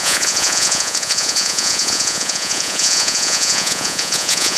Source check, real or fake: fake